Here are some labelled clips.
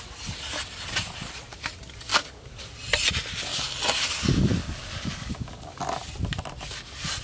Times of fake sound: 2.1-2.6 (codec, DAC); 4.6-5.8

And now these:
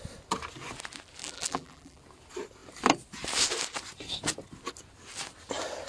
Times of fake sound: 1.2-2.0 (vocoder, BigVGAN v2)

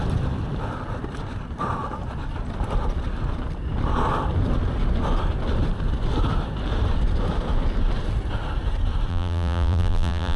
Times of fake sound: 9.1-10.4 (vocoder, BigVGAN v2)

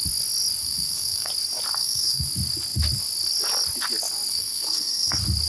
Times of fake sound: 0.6-1.3 (codec, SNAC); 1.8-2.3; 4.3-5.1

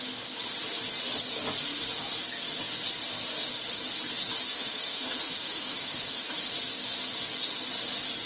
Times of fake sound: 4.5-6.5 (autoencoder, DAC-VAE)

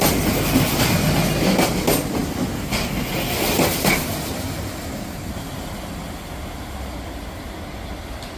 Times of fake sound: none

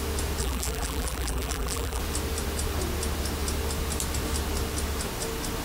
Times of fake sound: 0.4-2.0 (vocoder, BigVGAN v2)